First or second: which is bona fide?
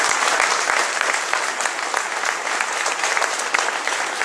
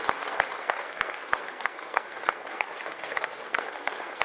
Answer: first